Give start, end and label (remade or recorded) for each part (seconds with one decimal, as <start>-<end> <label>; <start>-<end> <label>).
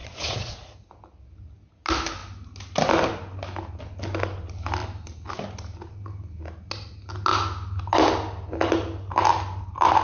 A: 0.0-0.9 remade; 0.9-10.0 recorded